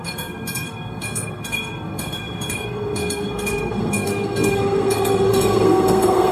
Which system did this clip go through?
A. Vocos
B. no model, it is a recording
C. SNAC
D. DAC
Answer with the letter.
C